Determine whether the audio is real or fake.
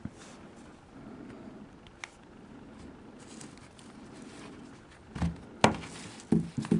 real